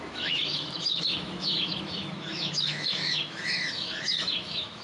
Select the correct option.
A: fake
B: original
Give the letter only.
A